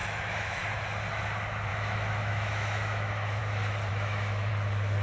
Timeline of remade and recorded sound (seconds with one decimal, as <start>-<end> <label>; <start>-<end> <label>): 0.0-0.6 remade; 0.6-1.7 recorded; 1.7-3.4 remade; 3.4-3.9 recorded; 3.9-4.5 remade; 4.5-5.0 recorded